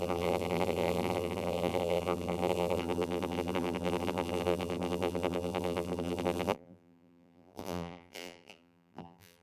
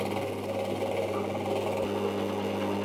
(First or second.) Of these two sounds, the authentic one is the second